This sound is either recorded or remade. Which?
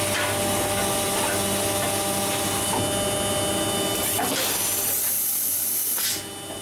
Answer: recorded